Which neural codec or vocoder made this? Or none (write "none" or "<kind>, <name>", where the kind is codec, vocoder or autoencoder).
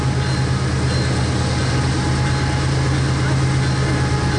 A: none